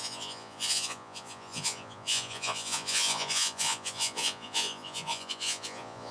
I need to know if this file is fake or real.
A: fake